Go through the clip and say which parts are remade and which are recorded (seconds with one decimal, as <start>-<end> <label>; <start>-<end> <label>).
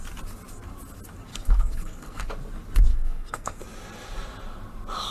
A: 0.0-1.3 recorded; 1.3-2.3 remade; 2.3-2.9 recorded; 2.9-3.6 remade; 3.6-5.1 recorded